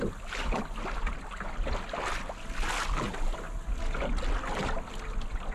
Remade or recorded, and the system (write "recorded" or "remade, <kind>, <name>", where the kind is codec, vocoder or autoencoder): recorded